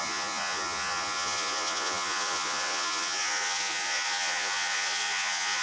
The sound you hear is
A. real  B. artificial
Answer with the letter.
B